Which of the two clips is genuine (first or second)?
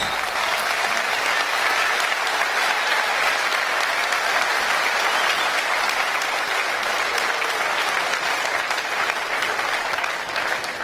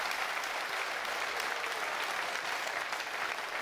first